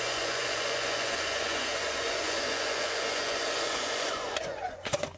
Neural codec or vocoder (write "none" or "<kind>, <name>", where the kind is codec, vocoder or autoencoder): vocoder, Vocos